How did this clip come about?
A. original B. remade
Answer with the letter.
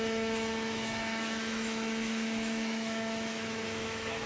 B